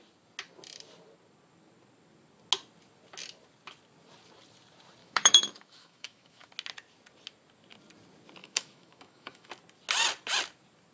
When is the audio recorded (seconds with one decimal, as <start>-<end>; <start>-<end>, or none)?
0.0-5.0; 6.5-8.4; 9.5-10.9